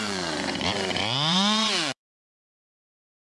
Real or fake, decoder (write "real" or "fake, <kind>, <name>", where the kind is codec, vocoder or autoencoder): fake, vocoder, Vocos